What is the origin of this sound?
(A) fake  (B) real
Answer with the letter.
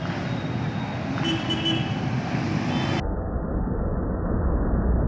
B